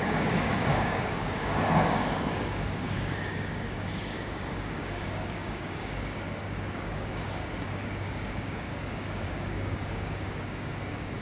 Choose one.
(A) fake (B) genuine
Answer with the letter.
A